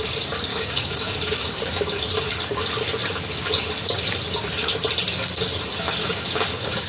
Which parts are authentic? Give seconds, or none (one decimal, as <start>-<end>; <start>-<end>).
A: 0.0-0.5; 1.7-6.0